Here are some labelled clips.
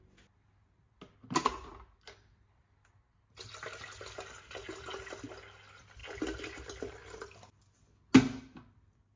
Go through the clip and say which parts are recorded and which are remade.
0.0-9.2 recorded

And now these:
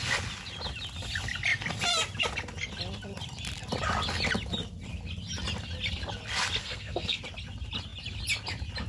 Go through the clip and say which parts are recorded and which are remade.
0.0-6.6 recorded; 6.6-7.2 remade; 7.2-8.9 recorded

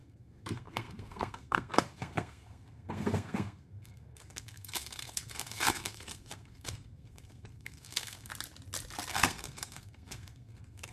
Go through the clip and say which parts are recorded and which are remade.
0.0-8.3 remade; 8.3-9.1 recorded; 9.1-10.9 remade

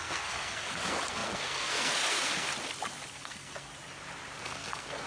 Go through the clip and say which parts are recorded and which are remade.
0.0-2.5 remade; 2.5-3.1 recorded; 3.1-3.7 remade; 3.7-4.4 recorded; 4.4-5.1 remade

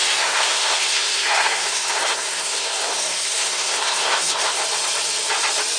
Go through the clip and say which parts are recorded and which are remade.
0.0-4.6 remade; 4.6-5.8 recorded